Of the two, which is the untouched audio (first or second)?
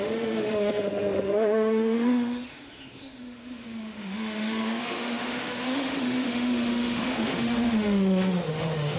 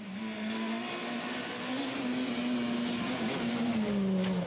second